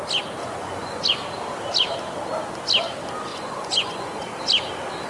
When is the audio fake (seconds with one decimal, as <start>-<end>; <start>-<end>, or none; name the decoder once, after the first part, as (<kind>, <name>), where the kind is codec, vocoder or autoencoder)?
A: 0.4-1.0 (vocoder, Vocos); 3.3-4.4